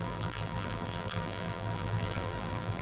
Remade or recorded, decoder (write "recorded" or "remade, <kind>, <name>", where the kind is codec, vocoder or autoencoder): remade, vocoder, BigVGAN v2